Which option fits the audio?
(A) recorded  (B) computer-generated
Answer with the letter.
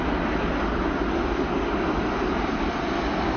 A